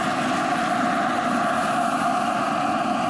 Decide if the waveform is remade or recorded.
recorded